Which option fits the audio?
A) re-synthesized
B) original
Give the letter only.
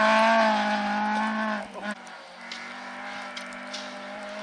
B